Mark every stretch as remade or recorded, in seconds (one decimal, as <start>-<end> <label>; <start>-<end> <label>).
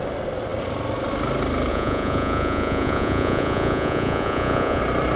0.0-1.7 recorded; 1.7-4.8 remade; 4.8-5.2 recorded